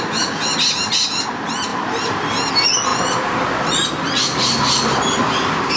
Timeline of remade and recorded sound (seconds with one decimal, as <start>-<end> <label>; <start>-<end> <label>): 0.0-1.7 recorded; 1.7-2.5 remade; 2.5-2.9 recorded; 2.9-4.0 remade; 4.0-5.8 recorded